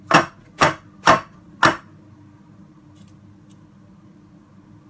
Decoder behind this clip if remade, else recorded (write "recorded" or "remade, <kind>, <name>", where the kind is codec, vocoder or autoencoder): recorded